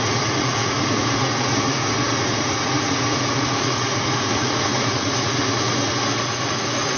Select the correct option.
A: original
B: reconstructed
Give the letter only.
B